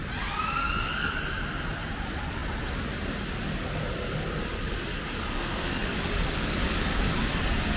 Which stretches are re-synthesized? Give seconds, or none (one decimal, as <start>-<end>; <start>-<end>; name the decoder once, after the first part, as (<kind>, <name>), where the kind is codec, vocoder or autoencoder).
0.6-1.2 (codec, DAC); 4.9-7.0

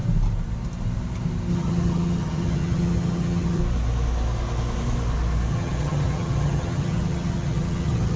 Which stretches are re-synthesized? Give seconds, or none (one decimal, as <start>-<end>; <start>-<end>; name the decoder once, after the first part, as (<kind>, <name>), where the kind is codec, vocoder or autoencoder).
1.5-3.6 (vocoder, HiFi-GAN); 5.5-8.2

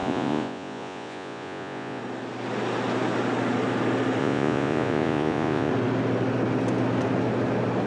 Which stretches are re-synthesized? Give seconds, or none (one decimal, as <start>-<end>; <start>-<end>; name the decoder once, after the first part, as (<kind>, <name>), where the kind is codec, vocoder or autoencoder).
0.0-2.0 (vocoder, Vocos); 4.2-5.7

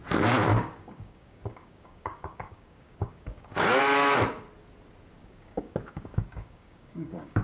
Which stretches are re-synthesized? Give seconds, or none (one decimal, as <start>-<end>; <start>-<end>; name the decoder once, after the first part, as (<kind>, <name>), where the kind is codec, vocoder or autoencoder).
0.5-3.8 (codec, DAC); 5.2-7.4

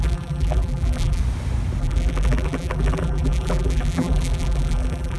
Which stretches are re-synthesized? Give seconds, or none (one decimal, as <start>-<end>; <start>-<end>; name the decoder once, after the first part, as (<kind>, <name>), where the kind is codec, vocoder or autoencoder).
0.0-1.2 (vocoder, BigVGAN v2); 1.8-5.2

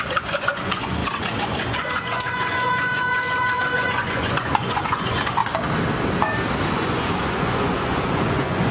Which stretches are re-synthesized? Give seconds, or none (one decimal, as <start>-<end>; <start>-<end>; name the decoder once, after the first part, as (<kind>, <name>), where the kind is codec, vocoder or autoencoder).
0.0-5.4 (vocoder, Vocos); 6.7-8.7

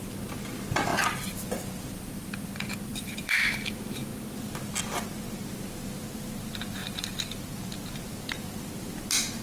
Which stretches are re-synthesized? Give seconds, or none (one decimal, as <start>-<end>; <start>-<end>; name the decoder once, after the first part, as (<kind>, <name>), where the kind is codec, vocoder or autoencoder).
0.9-2.5 (vocoder, BigVGAN v2); 2.9-3.5; 6.8-7.3

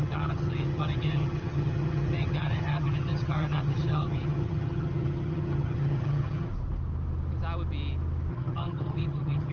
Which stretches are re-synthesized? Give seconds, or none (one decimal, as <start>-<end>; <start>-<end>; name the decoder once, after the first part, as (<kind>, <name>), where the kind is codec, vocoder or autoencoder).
0.0-6.5 (vocoder, HiFi-GAN); 8.3-9.5